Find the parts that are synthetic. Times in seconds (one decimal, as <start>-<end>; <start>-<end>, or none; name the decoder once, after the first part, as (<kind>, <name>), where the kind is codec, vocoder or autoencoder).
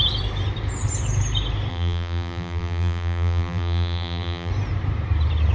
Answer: 1.7-4.5 (vocoder, BigVGAN v2)